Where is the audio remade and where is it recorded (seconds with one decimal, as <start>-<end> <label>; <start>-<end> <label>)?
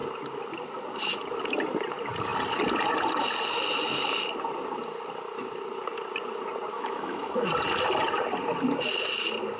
0.0-6.7 recorded; 6.7-7.5 remade; 7.5-9.6 recorded